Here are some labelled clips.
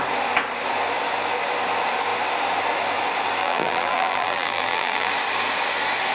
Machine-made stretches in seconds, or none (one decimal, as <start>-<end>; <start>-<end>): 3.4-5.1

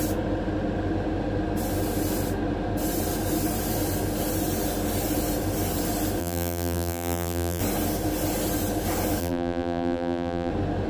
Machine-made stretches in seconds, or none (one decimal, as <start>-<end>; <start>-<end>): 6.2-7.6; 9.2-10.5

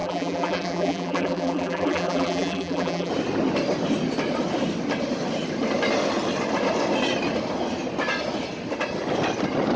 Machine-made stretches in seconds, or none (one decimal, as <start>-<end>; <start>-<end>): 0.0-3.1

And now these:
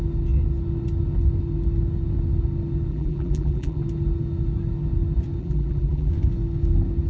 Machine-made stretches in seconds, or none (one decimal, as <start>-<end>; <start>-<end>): 2.9-3.8; 5.4-6.1

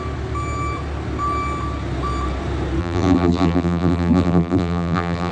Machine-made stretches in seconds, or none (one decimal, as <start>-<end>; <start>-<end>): 2.8-5.3

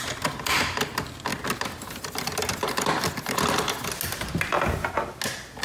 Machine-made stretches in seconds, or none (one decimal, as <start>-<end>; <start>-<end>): none

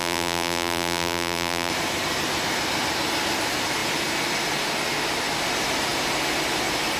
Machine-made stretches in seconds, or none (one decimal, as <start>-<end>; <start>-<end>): 0.0-1.7

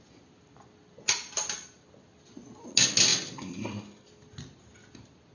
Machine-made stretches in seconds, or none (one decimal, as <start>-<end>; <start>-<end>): none